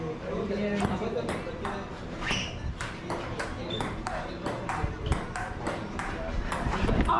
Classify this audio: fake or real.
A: real